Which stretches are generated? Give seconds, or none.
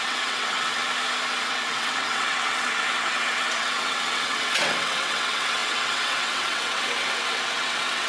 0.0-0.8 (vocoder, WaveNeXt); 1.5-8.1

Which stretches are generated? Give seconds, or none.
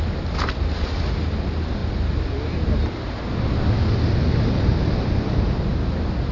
none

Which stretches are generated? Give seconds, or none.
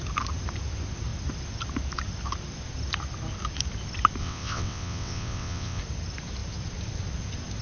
4.2-5.8 (vocoder, WaveNeXt)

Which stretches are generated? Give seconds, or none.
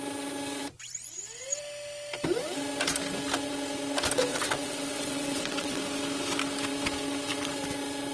4.3-5.8 (vocoder, WaveNeXt)